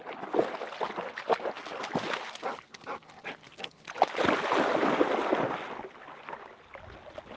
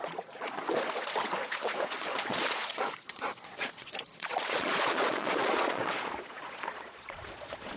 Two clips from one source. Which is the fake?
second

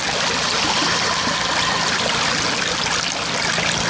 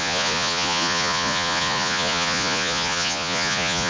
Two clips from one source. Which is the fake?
second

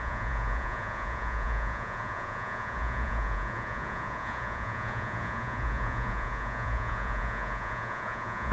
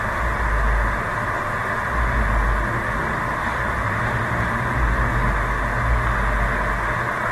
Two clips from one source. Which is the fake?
first